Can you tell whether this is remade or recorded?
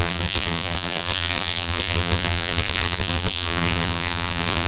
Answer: remade